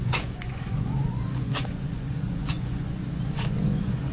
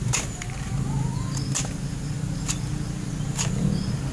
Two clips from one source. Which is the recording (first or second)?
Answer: second